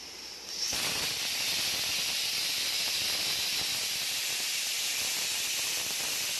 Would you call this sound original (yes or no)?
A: yes